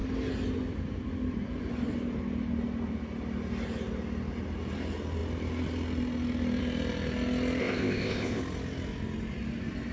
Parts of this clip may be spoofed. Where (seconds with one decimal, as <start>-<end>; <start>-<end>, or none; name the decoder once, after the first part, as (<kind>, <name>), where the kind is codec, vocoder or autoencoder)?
7.6-8.4 (codec, ZipCodec)